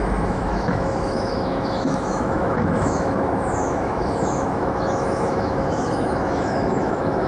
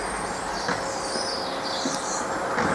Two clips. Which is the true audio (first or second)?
second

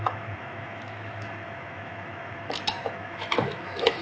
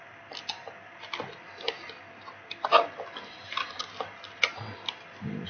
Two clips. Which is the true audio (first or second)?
second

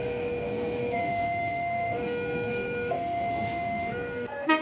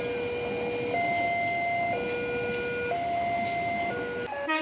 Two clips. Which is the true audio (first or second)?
second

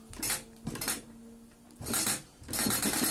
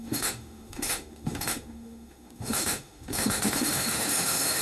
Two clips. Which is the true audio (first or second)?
first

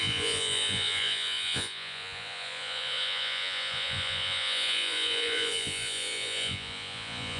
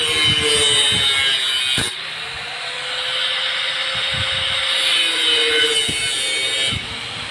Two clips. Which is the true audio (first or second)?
second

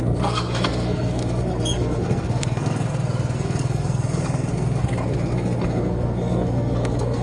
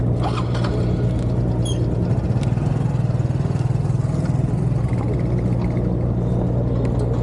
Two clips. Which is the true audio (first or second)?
second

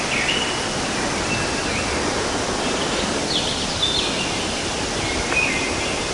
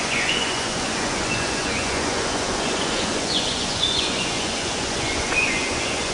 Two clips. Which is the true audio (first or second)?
first